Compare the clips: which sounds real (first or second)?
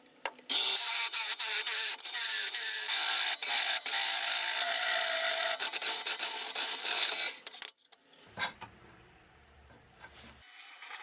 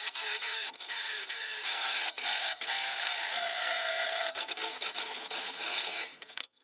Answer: first